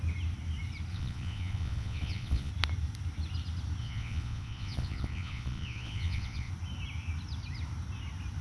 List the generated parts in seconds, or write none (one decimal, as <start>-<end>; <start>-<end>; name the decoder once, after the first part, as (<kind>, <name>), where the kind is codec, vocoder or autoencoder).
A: 0.9-2.5 (vocoder, Vocos); 3.8-6.5